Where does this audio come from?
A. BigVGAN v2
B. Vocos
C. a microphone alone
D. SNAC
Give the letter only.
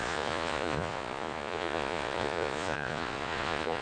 B